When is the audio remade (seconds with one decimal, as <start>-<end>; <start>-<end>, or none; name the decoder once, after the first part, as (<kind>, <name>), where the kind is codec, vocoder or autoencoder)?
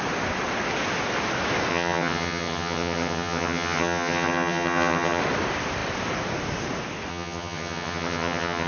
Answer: 1.7-5.2 (vocoder, HiFi-GAN); 7.1-8.7